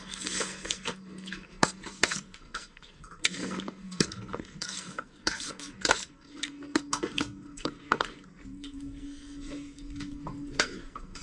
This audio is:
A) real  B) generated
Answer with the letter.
B